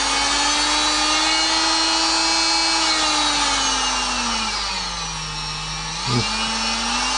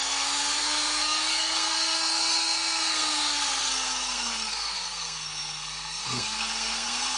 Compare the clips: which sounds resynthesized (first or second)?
second